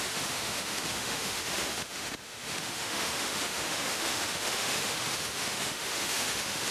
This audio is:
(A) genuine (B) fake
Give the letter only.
B